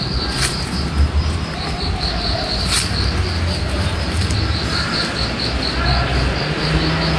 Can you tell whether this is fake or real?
real